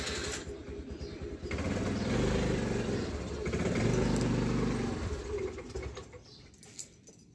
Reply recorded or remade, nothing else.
recorded